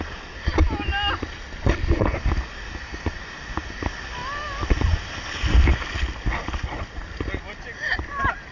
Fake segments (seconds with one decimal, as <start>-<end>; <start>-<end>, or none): none